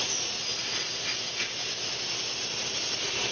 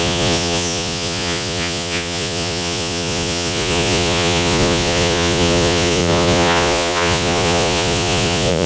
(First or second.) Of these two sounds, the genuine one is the first